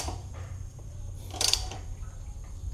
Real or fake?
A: fake